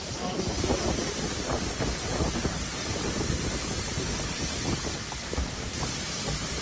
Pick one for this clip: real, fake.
real